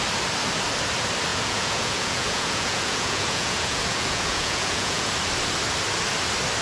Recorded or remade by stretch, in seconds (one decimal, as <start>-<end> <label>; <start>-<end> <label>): 0.0-1.3 recorded; 1.3-5.1 remade; 5.1-6.6 recorded